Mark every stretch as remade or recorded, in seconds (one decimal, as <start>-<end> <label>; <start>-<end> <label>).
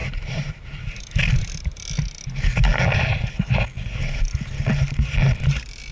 0.0-0.5 remade; 0.5-5.9 recorded